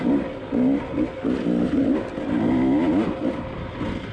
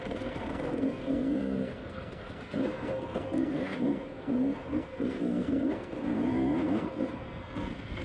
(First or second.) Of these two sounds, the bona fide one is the first